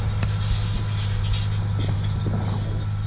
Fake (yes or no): no